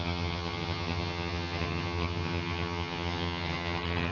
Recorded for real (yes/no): no